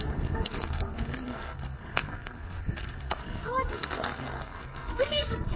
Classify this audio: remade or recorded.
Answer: remade